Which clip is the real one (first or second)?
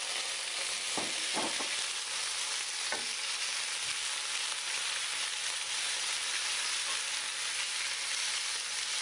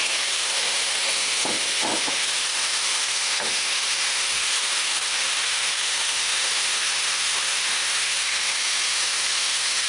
first